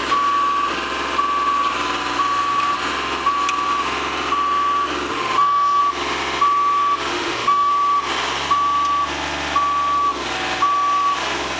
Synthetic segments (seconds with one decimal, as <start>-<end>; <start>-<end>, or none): 5.1-5.8; 7.1-7.7